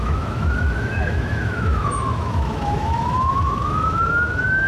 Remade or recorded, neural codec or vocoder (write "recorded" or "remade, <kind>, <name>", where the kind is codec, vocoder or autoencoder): remade, autoencoder, DAC-VAE